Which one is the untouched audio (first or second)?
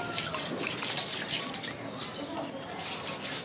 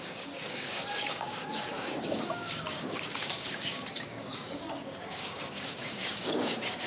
first